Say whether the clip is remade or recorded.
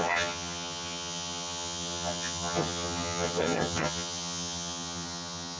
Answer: remade